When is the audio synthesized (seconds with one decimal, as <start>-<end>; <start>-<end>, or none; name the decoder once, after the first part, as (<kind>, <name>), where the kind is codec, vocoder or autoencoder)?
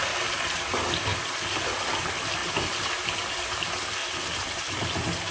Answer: none